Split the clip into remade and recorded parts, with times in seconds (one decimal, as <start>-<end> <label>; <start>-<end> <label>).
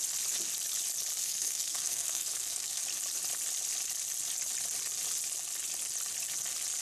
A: 0.0-1.2 recorded; 1.2-2.8 remade; 2.8-6.8 recorded